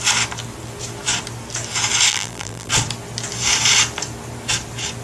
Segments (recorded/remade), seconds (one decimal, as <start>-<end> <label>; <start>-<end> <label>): 0.0-2.1 recorded; 2.1-2.7 remade; 2.7-5.0 recorded